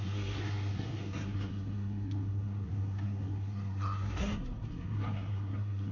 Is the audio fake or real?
fake